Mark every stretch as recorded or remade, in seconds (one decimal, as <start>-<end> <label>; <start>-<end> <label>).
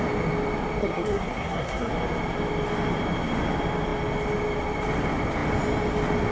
0.0-0.8 recorded; 0.8-1.9 remade; 1.9-6.3 recorded